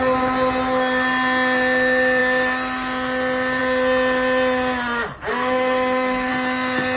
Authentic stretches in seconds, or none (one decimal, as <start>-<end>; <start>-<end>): 0.0-5.3; 6.3-7.0